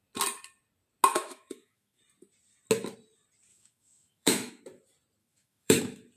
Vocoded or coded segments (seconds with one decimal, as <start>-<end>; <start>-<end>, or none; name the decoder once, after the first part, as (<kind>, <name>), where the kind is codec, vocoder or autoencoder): 1.1-2.0 (autoencoder, DAC-VAE); 3.5-4.6; 5.2-5.8

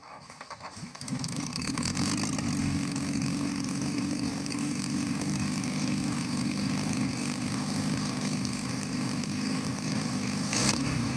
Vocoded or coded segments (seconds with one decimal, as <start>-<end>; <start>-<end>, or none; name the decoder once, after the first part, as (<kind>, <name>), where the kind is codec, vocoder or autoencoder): 0.0-2.1 (codec, DAC); 2.6-11.2

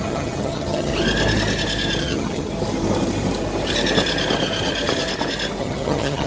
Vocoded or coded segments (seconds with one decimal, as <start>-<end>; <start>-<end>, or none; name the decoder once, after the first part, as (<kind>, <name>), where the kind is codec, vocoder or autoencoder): 0.0-0.9 (vocoder, HiFi-GAN); 2.0-2.5; 5.6-6.3

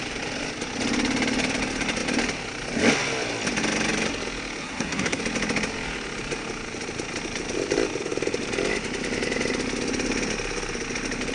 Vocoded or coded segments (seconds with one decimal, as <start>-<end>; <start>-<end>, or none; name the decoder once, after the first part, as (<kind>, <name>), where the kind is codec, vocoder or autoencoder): 4.6-5.2 (codec, SNAC)

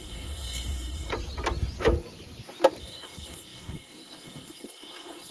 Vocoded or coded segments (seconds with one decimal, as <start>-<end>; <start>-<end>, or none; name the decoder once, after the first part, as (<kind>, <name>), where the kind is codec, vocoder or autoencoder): 0.0-1.1 (codec, SNAC); 2.8-5.3

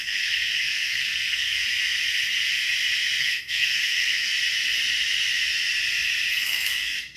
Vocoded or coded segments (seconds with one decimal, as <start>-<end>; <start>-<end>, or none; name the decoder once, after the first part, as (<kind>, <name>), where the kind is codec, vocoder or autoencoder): 0.0-1.6 (codec, SNAC); 3.2-4.3; 6.3-7.2